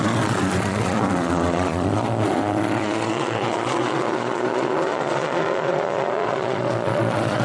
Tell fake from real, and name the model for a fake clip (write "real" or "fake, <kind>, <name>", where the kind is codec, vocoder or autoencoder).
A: fake, vocoder, Vocos